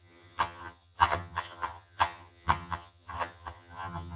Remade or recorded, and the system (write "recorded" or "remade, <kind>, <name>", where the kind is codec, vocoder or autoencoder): remade, vocoder, HiFi-GAN